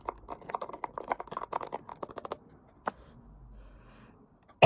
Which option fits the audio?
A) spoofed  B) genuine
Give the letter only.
B